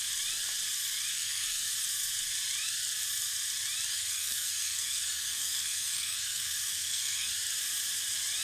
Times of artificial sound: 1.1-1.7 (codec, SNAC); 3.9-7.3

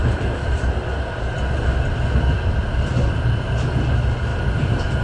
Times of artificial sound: 0.0-1.3 (vocoder, BigVGAN v2); 2.9-3.9; 4.3-5.0

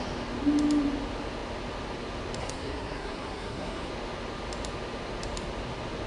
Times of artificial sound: 2.4-3.9 (codec, SNAC)

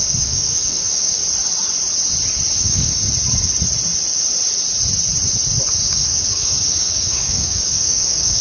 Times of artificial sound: 0.0-1.2 (codec, DAC); 2.6-3.0; 5.9-8.4

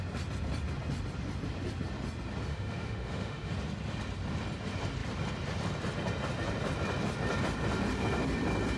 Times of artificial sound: 2.5-3.5 (autoencoder, DAC-VAE)

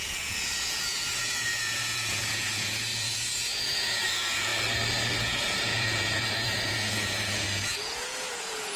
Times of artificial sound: 0.0-4.5 (vocoder, Vocos); 5.2-8.8

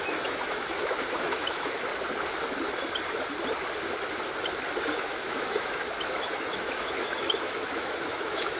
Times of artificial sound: 0.0-1.9 (autoencoder, DAC-VAE); 5.0-8.6